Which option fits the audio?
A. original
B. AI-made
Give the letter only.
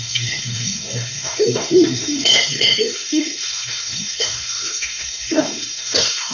B